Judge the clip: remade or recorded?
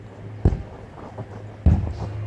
recorded